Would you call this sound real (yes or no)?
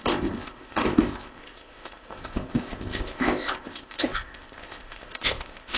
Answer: no